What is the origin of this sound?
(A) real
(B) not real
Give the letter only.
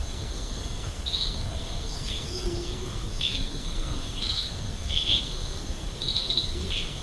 B